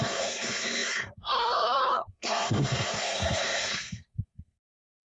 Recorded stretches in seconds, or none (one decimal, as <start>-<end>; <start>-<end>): none